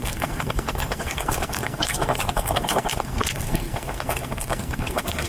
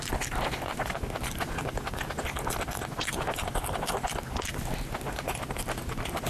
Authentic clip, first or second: second